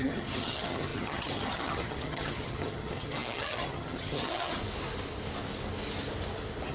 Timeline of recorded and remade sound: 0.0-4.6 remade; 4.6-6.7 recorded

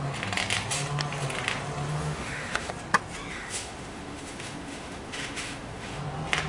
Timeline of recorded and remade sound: 0.0-1.9 recorded; 1.9-2.7 remade; 2.7-3.3 recorded; 3.3-6.0 remade; 6.0-6.5 recorded

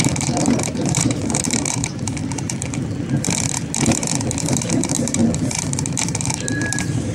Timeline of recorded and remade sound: 0.0-2.2 remade; 2.2-4.5 recorded; 4.5-5.2 remade; 5.2-5.8 recorded; 5.8-7.1 remade

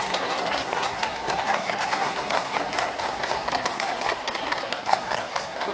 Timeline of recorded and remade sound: 0.0-5.7 remade

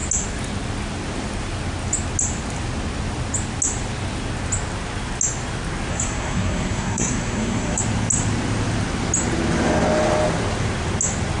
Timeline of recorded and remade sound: 0.0-5.9 recorded; 5.9-7.8 remade; 7.8-11.4 recorded

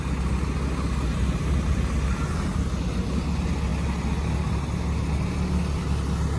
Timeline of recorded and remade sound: 0.0-6.4 recorded

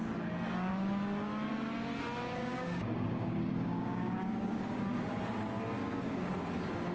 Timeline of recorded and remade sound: 0.0-2.4 recorded; 2.4-5.0 remade; 5.0-5.8 recorded; 5.8-6.3 remade; 6.3-6.9 recorded